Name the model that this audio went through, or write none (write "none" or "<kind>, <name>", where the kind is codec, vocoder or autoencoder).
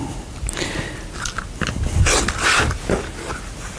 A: none